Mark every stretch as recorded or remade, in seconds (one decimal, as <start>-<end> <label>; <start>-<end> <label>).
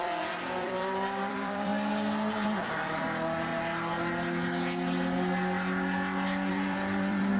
0.0-1.7 remade; 1.7-2.6 recorded; 2.6-3.5 remade; 3.5-6.5 recorded; 6.5-7.4 remade